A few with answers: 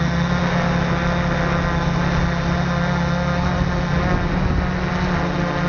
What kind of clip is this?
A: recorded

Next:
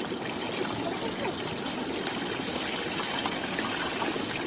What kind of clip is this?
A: recorded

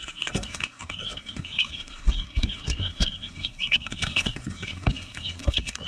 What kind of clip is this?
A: remade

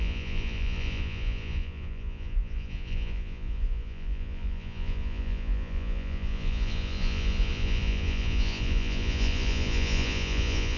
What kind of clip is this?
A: remade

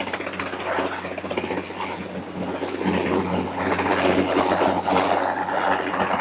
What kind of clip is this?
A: recorded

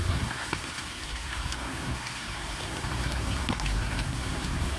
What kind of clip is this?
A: remade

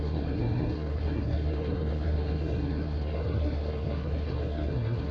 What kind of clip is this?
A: remade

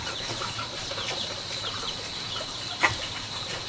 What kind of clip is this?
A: remade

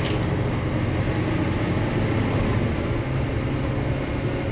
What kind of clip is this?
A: recorded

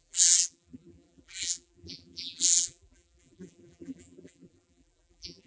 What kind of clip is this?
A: remade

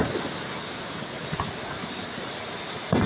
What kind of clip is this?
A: recorded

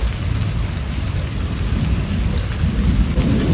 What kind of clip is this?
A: recorded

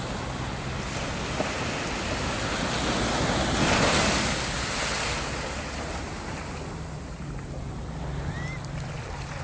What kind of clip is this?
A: recorded